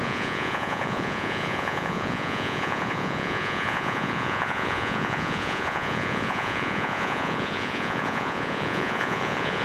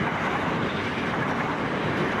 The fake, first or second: first